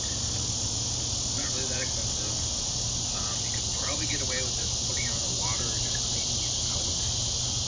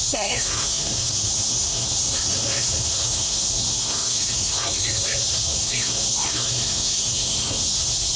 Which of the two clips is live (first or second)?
first